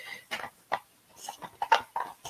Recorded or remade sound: recorded